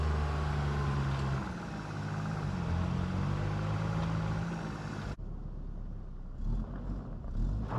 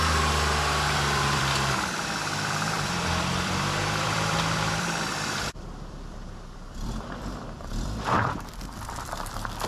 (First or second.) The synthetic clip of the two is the second